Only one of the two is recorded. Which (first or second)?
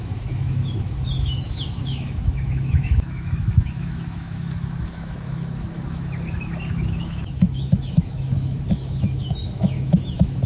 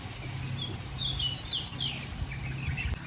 second